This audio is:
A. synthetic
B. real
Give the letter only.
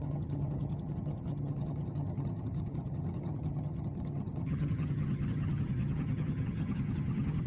A